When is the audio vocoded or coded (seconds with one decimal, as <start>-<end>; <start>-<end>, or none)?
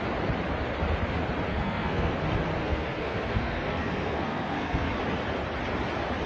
1.5-2.1; 2.6-5.0